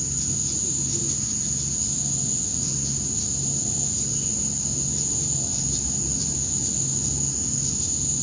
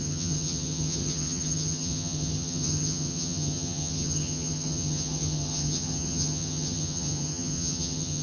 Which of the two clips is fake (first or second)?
second